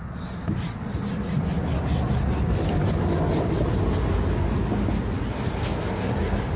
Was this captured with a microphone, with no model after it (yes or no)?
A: yes